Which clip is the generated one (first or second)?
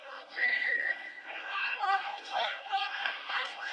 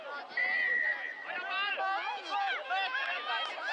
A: first